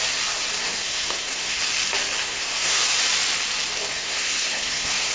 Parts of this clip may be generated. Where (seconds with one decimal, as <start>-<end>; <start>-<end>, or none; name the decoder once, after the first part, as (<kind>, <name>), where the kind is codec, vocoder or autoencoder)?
0.6-1.6 (codec, SNAC); 2.2-2.8; 3.9-5.1